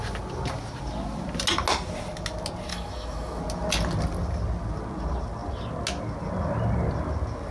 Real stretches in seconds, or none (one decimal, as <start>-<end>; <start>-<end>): 0.0-2.7; 3.4-7.5